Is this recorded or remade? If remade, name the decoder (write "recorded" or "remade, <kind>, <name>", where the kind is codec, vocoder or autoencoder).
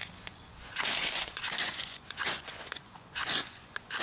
remade, vocoder, Vocos